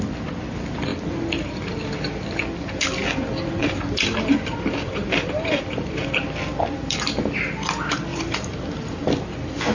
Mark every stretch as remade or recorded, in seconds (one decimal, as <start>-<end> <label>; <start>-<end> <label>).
0.0-3.6 recorded; 3.6-6.1 remade; 6.1-8.1 recorded; 8.1-9.1 remade; 9.1-9.7 recorded